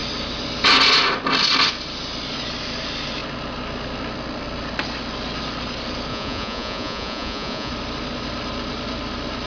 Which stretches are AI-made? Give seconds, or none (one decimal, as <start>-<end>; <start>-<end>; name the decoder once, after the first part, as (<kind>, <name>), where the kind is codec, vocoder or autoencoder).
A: 6.1-7.7 (vocoder, Vocos)